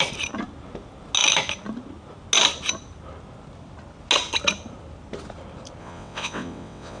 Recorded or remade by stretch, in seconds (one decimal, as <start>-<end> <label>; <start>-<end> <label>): 0.0-5.8 recorded; 5.8-7.0 remade